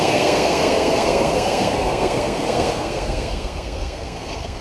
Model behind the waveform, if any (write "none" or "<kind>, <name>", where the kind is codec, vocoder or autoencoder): codec, SNAC